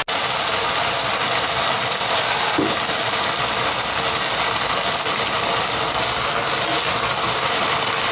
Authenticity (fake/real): real